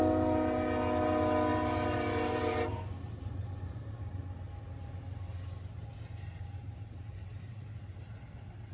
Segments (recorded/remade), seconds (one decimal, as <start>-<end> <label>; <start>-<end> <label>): 0.0-1.5 recorded; 1.5-4.2 remade; 4.2-6.6 recorded; 6.6-8.0 remade; 8.0-8.7 recorded